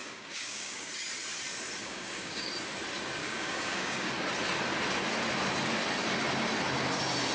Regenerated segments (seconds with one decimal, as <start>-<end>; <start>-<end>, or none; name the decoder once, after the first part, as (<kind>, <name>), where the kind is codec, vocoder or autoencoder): 0.0-0.9 (codec, DAC); 1.8-2.5; 3.2-4.1